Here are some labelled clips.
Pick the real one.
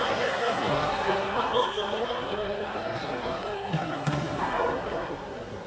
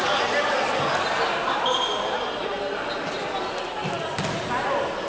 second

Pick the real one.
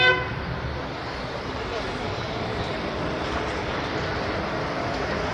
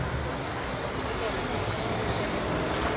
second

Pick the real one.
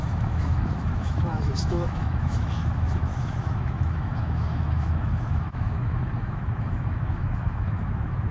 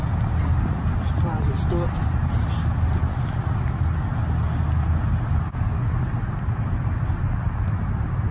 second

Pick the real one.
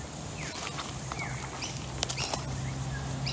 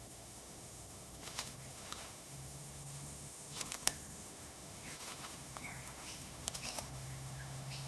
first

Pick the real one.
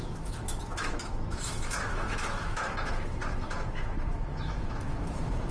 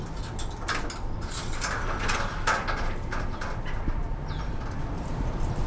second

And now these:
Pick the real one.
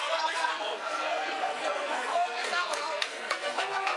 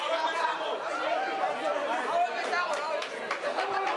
second